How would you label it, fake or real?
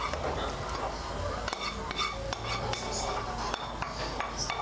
real